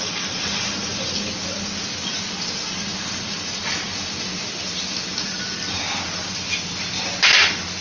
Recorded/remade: recorded